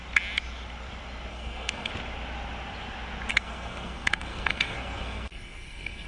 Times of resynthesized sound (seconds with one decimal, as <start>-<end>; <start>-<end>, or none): 1.3-1.9; 3.3-6.1